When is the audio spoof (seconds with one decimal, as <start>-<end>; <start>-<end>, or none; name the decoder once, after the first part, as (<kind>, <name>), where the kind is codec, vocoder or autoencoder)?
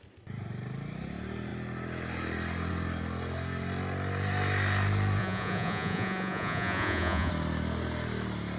5.2-7.3 (vocoder, Vocos)